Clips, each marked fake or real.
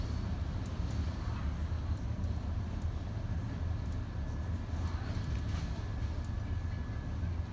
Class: real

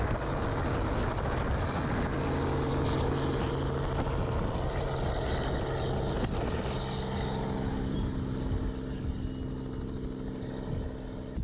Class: real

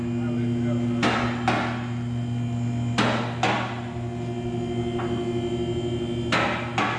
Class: real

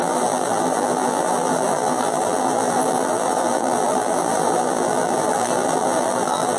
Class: fake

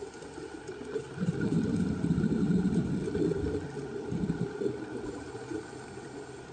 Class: real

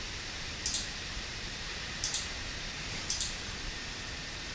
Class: fake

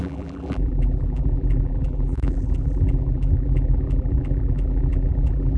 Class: fake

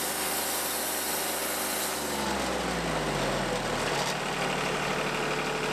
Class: real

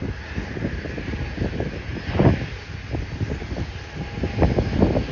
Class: real